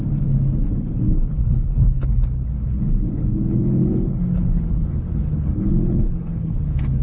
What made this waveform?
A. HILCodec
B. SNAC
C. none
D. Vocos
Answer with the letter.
A